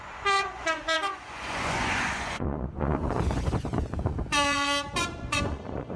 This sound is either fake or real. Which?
fake